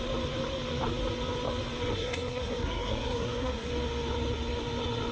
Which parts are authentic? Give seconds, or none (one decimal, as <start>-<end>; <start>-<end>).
0.0-1.9; 3.7-5.1